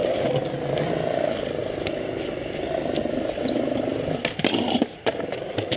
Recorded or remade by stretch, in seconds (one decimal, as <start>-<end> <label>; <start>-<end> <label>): 0.0-5.8 remade